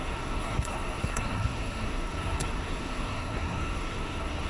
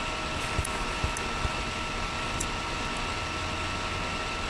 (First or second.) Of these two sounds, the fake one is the first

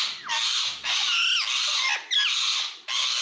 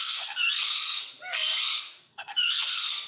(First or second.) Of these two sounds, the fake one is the second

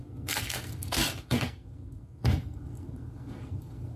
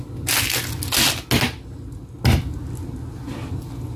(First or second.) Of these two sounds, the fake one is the first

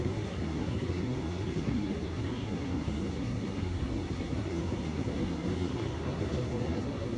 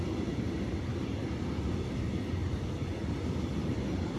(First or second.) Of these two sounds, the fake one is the first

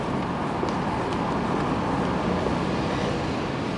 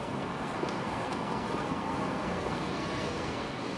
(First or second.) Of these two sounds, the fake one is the second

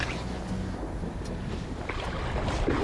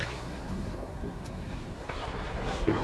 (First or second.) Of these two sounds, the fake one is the second